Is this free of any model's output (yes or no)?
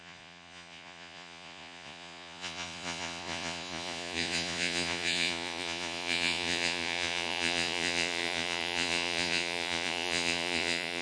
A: no